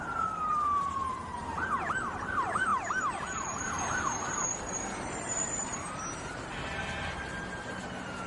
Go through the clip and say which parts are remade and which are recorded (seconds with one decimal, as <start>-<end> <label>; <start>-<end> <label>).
0.0-8.3 remade